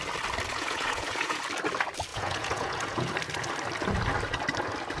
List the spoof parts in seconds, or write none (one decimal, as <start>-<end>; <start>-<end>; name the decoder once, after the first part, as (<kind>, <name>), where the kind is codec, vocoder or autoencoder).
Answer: 0.5-1.4 (vocoder, Vocos); 2.1-3.1

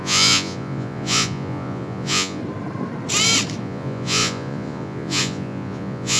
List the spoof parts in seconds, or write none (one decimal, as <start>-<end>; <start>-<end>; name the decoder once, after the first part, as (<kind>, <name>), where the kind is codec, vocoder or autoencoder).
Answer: 0.0-2.4 (vocoder, Vocos); 3.6-6.2

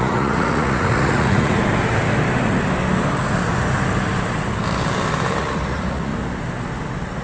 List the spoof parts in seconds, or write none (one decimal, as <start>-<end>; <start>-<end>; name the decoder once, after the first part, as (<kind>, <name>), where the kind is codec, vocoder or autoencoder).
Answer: 0.0-1.6 (vocoder, Vocos); 5.4-6.1

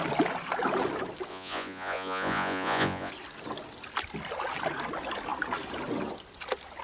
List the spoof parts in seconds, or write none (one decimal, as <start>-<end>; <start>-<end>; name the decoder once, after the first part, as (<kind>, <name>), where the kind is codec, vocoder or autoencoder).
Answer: 1.3-3.1 (vocoder, Vocos)

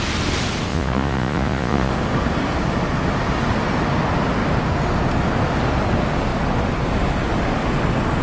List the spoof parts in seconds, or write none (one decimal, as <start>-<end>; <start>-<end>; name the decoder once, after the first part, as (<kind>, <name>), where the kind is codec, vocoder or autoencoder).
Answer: 0.7-1.9 (vocoder, Vocos)